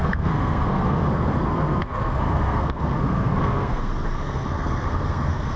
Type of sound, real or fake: fake